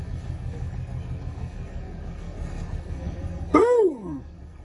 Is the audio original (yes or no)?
no